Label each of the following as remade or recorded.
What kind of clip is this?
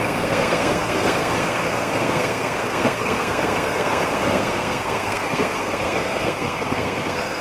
remade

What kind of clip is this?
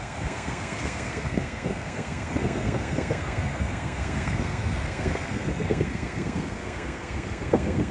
remade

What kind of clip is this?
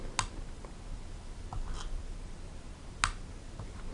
recorded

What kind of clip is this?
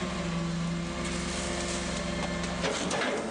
recorded